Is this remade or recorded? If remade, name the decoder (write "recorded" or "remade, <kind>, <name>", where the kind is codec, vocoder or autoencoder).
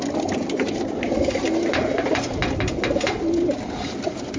recorded